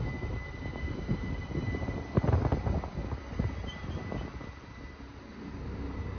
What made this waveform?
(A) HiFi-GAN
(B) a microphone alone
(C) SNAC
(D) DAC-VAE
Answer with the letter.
B